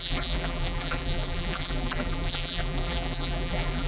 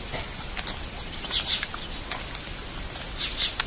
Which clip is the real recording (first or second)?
second